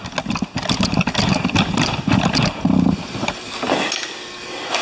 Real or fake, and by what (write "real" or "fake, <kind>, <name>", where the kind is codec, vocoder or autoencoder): real